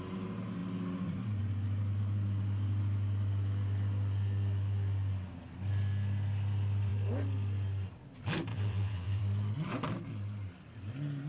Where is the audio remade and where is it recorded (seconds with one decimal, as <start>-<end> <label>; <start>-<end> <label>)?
0.0-8.5 recorded; 8.5-9.2 remade; 9.2-11.3 recorded